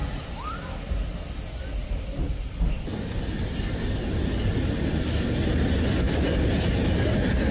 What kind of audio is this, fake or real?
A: real